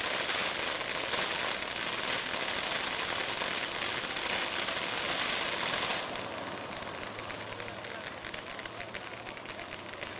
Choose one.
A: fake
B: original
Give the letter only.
B